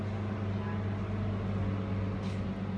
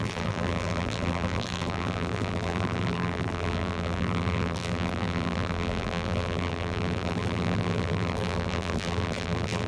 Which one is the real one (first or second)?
first